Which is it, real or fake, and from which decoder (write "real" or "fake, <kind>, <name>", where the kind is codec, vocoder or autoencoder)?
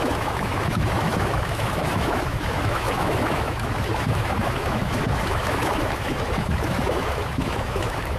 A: fake, autoencoder, DAC-VAE